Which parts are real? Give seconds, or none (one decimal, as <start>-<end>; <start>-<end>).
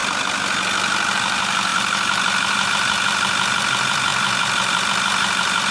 0.0-1.1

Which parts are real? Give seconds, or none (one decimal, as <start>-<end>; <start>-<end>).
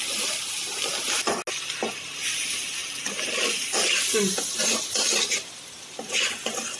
0.0-6.8